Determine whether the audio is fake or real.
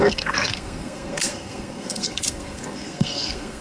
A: fake